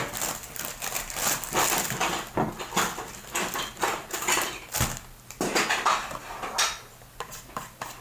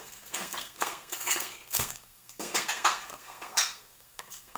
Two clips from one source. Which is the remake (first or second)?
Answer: second